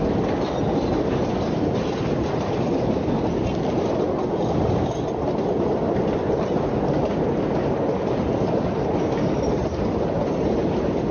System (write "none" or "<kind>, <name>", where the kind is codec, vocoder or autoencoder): none